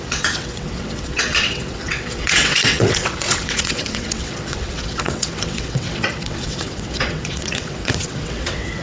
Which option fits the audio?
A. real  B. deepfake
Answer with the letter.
B